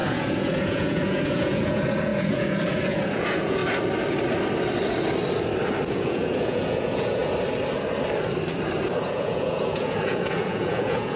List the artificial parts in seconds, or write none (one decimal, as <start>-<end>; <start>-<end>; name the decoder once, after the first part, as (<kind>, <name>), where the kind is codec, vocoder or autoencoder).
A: 0.0-3.6 (vocoder, Vocos); 5.9-7.2; 9.0-11.2